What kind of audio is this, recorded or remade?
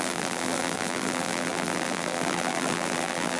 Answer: remade